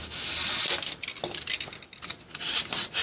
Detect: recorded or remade recorded